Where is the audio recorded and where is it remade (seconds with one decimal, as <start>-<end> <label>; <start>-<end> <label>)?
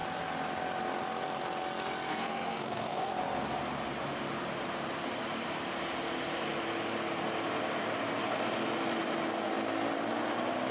0.0-2.1 recorded; 2.1-3.1 remade; 3.1-10.7 recorded